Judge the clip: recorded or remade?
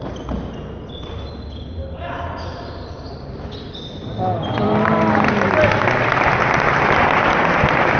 recorded